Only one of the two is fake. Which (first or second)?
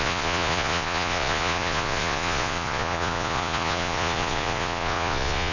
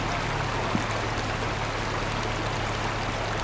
first